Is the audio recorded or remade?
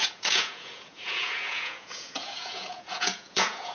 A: remade